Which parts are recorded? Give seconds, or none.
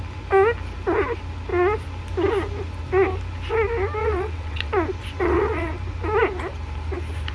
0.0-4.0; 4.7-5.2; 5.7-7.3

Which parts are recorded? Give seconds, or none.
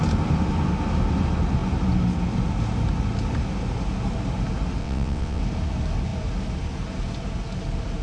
0.0-4.8; 5.4-8.0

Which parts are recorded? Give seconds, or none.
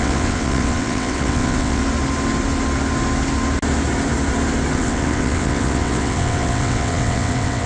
1.8-4.7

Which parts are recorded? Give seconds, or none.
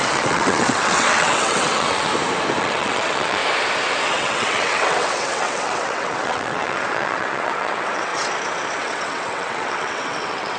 2.1-2.6; 3.4-4.0; 8.1-8.8